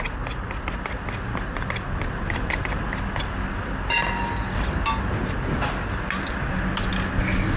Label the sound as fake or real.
real